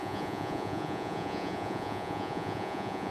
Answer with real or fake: fake